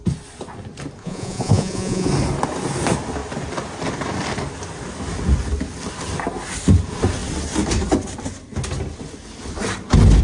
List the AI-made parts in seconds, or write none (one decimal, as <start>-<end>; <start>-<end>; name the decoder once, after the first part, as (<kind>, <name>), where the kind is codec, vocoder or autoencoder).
1.0-2.1 (vocoder, Vocos)